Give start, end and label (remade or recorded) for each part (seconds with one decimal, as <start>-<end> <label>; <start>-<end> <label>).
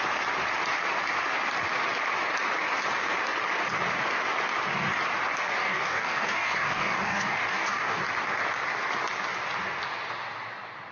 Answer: 0.0-5.6 recorded; 5.6-8.0 remade; 8.0-10.9 recorded